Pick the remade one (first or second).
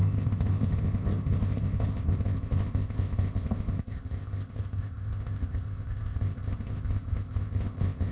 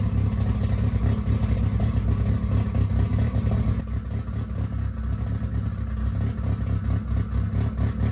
first